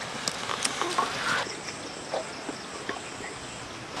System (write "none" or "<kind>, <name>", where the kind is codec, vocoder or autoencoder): none